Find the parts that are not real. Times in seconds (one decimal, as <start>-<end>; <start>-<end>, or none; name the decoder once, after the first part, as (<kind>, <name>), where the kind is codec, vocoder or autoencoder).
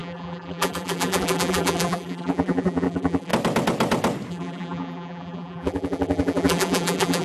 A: 0.0-3.3 (vocoder, BigVGAN v2); 4.3-7.2